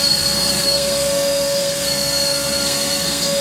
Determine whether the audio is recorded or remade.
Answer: remade